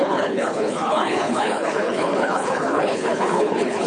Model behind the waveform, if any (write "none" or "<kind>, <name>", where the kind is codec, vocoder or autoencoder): codec, HILCodec